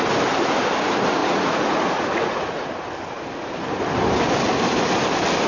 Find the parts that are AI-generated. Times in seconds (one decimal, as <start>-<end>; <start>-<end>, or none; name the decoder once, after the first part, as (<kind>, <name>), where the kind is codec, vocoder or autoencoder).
1.2-2.7 (vocoder, Vocos)